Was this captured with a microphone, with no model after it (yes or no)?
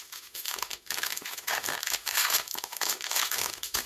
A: no